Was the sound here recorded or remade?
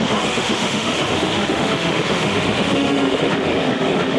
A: remade